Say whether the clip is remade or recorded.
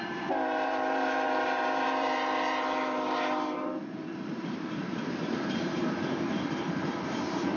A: remade